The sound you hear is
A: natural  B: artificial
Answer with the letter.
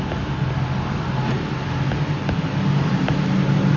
A